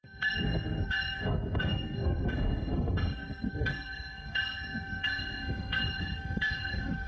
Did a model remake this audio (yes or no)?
yes